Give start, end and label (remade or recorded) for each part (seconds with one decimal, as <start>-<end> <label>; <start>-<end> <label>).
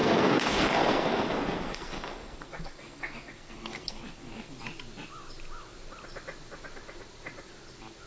0.0-4.5 remade; 4.5-8.1 recorded